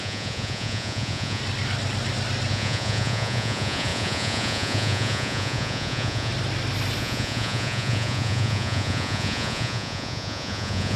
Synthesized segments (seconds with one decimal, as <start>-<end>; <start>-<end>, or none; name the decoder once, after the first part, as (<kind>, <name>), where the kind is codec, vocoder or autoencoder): 0.0-1.4 (vocoder, Vocos); 2.5-6.3; 7.0-11.0